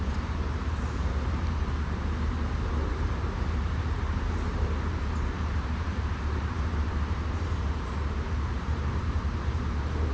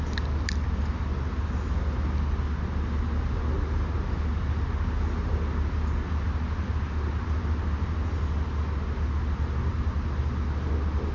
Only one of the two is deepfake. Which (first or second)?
first